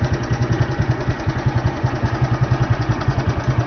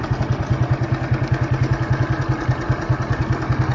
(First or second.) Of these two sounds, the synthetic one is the first